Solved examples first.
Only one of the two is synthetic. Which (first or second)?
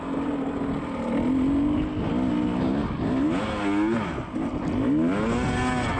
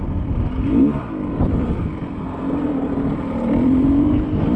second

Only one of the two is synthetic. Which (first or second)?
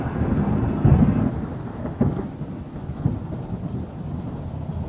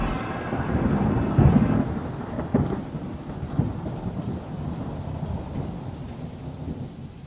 second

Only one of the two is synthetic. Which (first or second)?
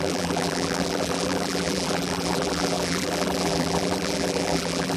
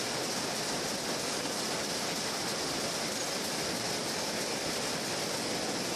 first